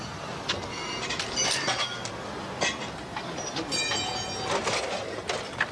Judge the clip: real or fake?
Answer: real